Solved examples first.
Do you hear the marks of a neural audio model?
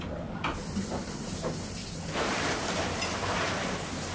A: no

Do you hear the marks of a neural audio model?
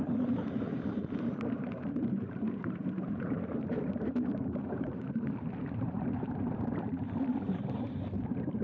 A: yes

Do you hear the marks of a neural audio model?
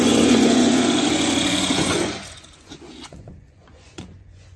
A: yes